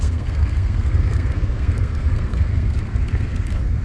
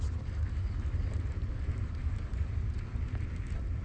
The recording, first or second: second